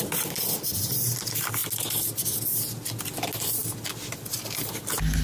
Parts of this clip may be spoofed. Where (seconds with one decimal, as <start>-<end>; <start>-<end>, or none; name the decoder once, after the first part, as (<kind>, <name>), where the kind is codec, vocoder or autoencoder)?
none